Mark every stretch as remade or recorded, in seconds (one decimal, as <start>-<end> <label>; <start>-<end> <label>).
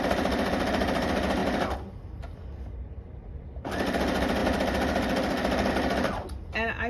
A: 0.0-6.9 recorded